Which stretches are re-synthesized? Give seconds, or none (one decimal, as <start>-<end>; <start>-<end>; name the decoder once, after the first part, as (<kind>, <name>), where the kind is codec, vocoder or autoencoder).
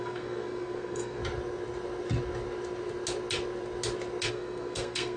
0.0-1.2 (codec, SNAC); 4.3-5.2